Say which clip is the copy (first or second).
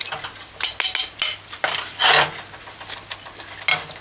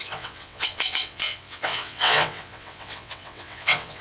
second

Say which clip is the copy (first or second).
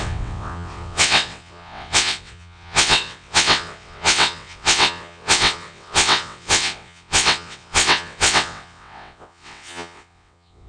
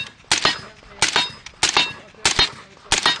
first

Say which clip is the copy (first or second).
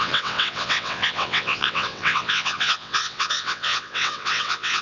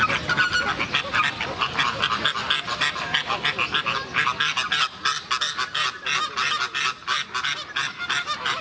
first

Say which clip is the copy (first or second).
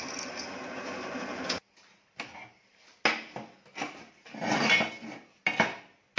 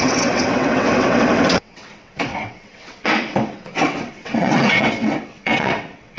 second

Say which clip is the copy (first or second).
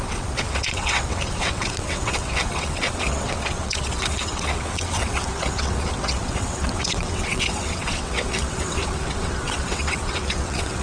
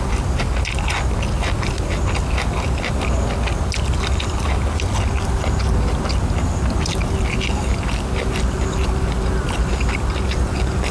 first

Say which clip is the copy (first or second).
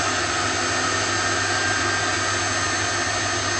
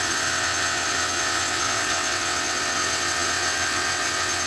second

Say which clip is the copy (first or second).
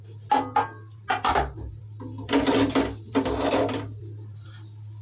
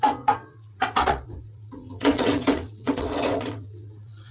second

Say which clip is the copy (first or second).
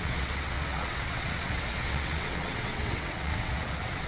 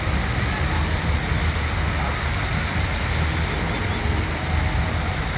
first